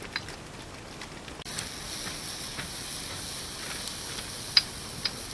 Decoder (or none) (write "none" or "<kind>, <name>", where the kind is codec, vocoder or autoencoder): none